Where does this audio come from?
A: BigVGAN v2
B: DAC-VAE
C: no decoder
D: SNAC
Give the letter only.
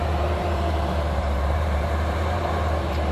A